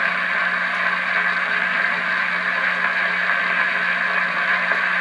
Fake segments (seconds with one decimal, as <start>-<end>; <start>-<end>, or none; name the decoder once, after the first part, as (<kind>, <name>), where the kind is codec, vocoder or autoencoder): none